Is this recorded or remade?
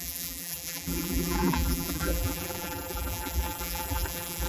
remade